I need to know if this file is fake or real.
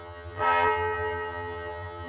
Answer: fake